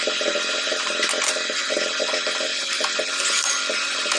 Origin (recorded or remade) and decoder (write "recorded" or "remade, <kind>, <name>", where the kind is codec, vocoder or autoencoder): remade, vocoder, BigVGAN v2